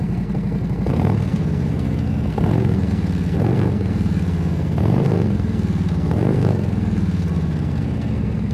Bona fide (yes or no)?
no